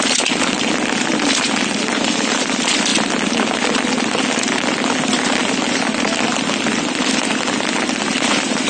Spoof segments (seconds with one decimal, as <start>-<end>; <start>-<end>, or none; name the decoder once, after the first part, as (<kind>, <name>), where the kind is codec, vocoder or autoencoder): none